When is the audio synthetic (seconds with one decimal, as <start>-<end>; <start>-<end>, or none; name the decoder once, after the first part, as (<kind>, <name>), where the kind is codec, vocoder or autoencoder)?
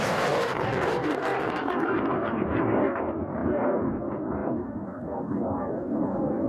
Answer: 0.0-6.5 (codec, DAC)